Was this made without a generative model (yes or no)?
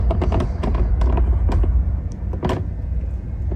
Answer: yes